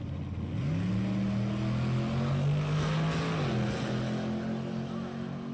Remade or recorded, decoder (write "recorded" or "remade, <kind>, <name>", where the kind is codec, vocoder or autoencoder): recorded